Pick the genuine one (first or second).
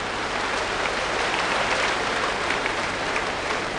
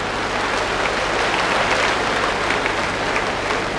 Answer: second